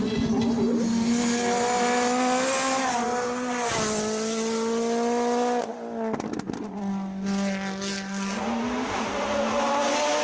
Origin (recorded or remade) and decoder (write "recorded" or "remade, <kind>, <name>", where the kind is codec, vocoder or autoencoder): recorded